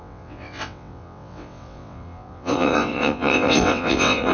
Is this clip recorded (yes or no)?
no